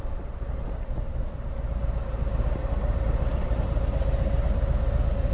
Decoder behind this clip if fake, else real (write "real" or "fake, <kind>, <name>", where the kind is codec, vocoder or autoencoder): real